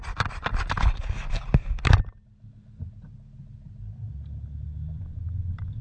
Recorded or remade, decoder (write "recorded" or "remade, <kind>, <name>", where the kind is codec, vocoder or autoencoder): recorded